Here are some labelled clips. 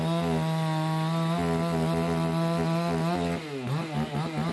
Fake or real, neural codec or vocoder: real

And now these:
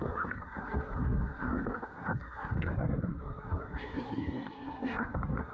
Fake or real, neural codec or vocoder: fake, codec, SNAC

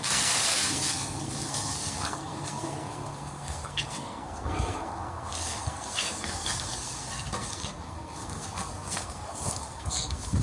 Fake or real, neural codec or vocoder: fake, codec, SNAC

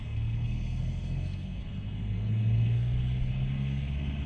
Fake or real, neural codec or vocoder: fake, codec, SNAC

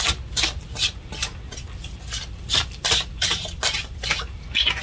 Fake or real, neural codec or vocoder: real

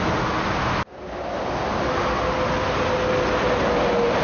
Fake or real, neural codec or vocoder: real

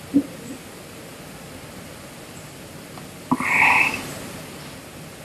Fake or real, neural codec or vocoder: real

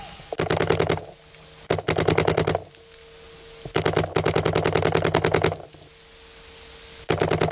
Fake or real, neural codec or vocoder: real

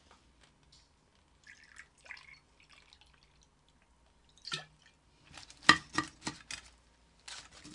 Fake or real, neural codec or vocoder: real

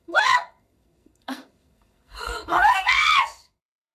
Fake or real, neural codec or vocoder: fake, codec, SNAC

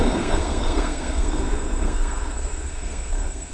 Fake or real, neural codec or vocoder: fake, codec, SNAC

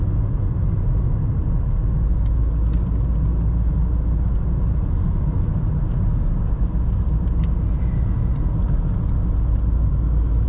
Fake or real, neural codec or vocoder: real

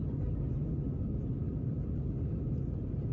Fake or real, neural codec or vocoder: real